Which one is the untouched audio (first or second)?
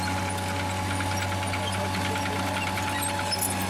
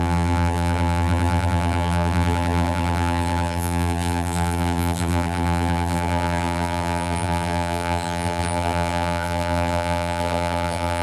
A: first